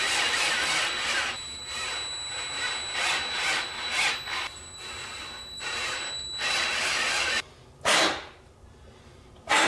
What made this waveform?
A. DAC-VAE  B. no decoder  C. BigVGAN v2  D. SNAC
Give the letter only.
B